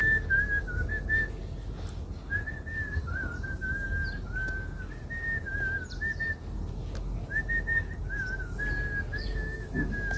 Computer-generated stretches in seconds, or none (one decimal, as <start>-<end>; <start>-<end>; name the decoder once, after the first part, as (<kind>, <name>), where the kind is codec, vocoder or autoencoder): 9.1-10.2 (autoencoder, DAC-VAE)